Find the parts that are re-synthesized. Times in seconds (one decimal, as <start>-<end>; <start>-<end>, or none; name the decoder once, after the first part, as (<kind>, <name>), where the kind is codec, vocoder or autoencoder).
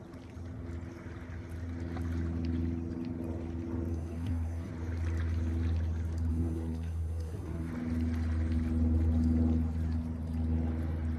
3.9-4.7 (codec, SNAC); 6.3-7.7